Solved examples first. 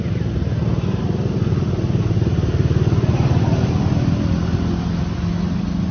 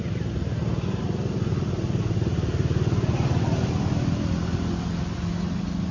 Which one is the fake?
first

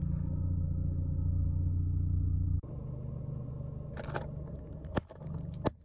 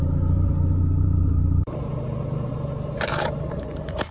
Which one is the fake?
second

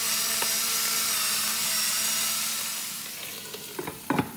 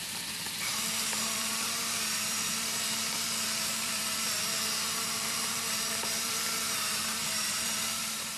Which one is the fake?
second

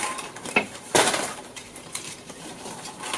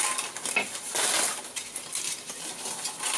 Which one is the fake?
first